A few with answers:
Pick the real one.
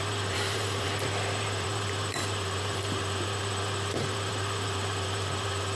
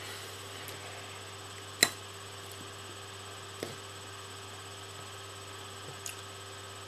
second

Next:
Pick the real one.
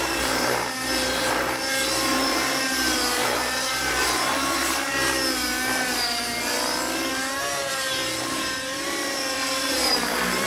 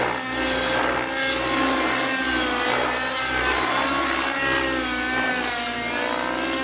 second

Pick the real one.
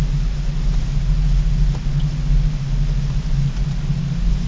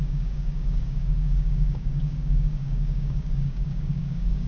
first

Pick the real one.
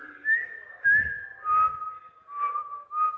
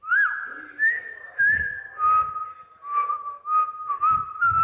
first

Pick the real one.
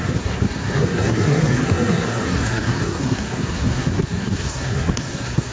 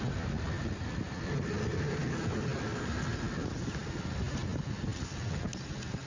second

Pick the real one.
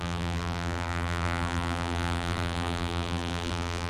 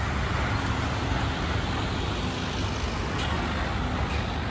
second